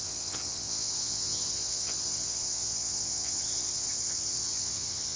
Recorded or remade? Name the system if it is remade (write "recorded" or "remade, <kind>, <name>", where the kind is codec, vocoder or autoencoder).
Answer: remade, vocoder, WaveNeXt